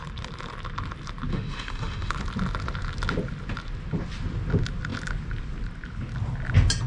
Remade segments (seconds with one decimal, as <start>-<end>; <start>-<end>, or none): 1.3-2.1